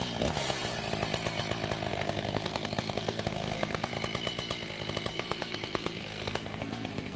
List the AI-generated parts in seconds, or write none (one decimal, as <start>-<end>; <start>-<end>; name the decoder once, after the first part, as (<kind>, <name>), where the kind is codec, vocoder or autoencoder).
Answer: 1.9-3.9 (codec, SNAC); 5.1-7.2